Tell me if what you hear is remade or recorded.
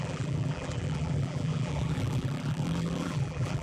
remade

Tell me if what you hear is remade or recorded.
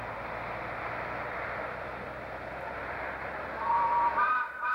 recorded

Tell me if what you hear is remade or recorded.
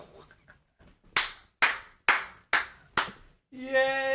recorded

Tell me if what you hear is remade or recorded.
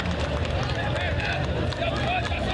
recorded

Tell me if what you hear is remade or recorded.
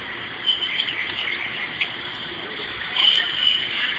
remade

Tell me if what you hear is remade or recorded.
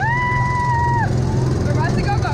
recorded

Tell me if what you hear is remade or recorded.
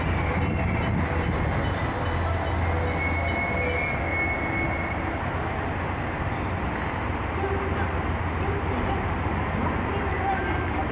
recorded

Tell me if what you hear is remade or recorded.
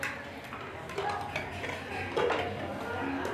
recorded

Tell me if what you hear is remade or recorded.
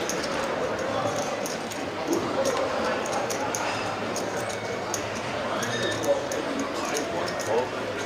remade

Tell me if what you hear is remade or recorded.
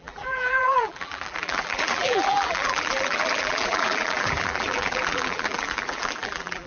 remade